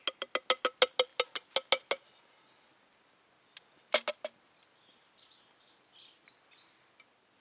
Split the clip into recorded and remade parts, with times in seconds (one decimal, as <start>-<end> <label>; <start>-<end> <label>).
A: 0.0-7.4 recorded